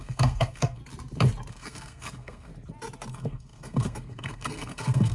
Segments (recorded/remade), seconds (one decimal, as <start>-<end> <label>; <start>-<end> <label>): 0.0-0.8 remade; 0.8-1.5 recorded; 1.5-2.5 remade; 2.5-3.1 recorded; 3.1-5.1 remade